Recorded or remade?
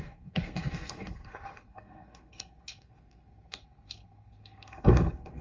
remade